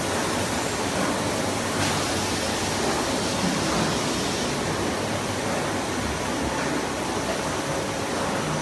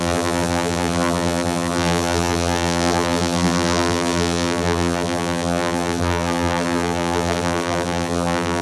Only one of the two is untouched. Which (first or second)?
first